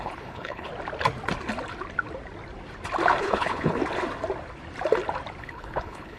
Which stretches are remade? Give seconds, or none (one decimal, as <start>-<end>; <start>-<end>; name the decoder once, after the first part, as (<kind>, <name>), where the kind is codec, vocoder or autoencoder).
0.0-0.7 (codec, HILCodec); 3.2-3.8; 5.4-6.2